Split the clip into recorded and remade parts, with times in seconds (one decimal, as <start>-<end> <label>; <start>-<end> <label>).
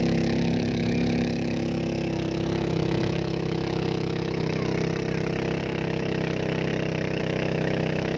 0.0-4.7 remade; 4.7-5.6 recorded; 5.6-6.7 remade; 6.7-7.2 recorded; 7.2-8.2 remade